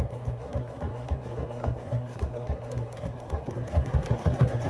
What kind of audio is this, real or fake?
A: fake